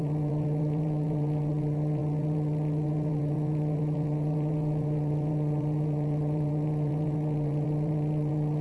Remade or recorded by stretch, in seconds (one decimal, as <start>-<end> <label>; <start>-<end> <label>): 0.0-8.6 remade